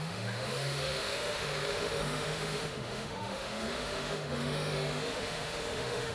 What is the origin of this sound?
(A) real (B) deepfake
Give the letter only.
B